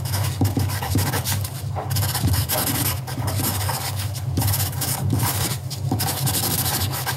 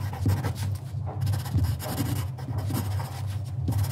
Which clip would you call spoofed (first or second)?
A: first